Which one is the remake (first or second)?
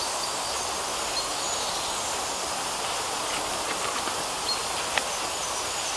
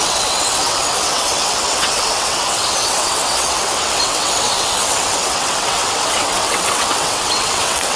second